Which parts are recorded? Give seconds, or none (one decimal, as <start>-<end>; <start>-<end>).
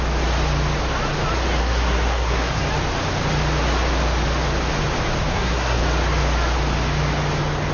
0.0-1.6; 2.6-5.3; 5.8-7.7